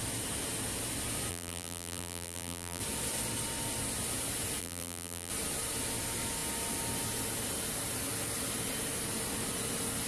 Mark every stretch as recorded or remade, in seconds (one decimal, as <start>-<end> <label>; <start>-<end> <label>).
0.0-1.3 recorded; 1.3-2.8 remade; 2.8-4.6 recorded; 4.6-5.3 remade; 5.3-10.1 recorded